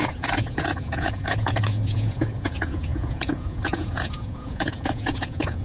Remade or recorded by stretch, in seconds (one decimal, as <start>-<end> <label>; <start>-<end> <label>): 0.0-5.6 remade